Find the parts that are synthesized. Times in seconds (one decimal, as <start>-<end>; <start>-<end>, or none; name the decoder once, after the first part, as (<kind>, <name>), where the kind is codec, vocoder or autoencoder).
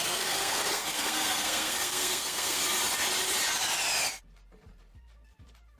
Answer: 0.0-2.6 (codec, SNAC)